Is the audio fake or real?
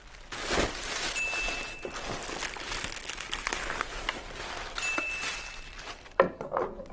real